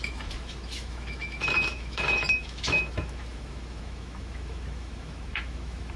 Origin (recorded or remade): remade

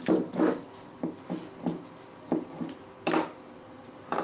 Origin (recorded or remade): recorded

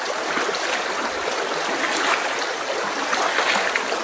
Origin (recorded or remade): recorded